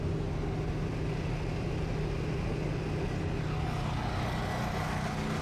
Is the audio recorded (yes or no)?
yes